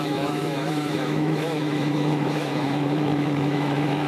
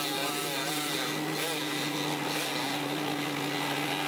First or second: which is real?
second